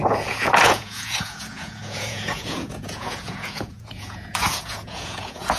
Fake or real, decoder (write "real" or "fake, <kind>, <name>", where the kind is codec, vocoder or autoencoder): fake, vocoder, Vocos